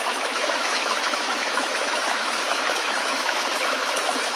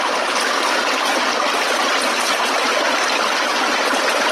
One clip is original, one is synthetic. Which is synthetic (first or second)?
first